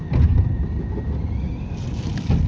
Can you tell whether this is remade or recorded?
recorded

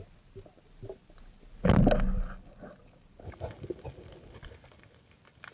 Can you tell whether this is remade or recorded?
recorded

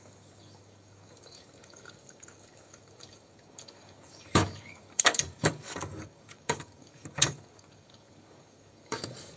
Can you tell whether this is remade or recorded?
remade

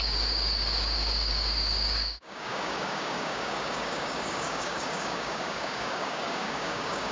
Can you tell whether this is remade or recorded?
remade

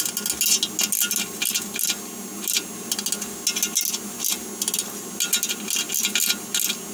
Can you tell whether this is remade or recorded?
recorded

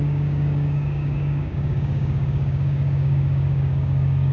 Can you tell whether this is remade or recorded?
remade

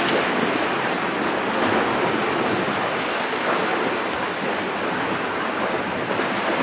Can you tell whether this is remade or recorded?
recorded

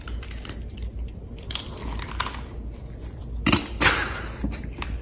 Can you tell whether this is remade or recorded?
recorded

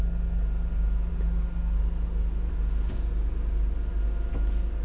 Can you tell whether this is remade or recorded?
recorded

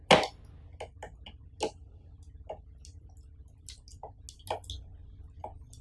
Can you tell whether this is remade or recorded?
recorded